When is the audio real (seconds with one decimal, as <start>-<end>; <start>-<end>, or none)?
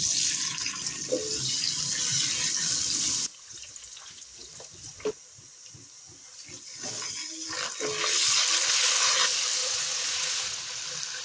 0.0-9.6; 10.7-11.2